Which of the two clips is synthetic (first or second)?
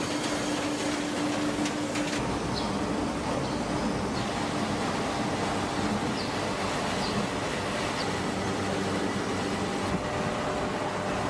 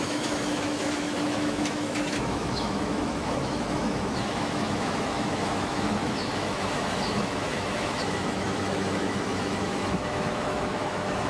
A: second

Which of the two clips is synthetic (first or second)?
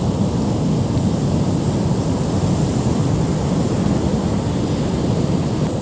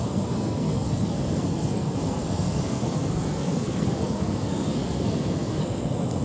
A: second